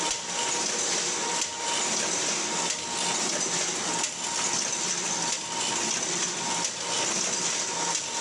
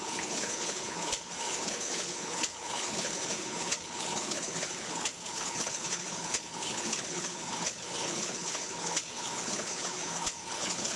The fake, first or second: second